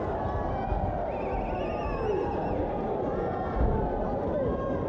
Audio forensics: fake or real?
real